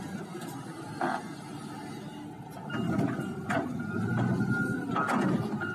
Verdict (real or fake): real